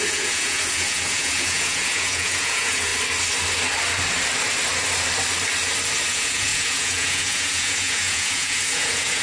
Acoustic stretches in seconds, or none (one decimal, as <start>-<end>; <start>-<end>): 2.9-6.1